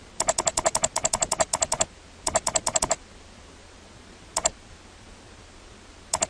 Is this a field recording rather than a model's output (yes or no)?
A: yes